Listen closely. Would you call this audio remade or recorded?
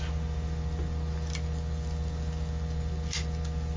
recorded